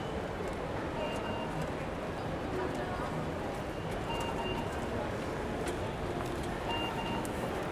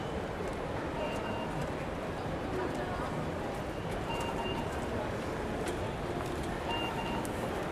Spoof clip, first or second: second